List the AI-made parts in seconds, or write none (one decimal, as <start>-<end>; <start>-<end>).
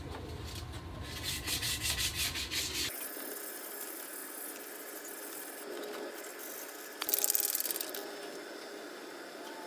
none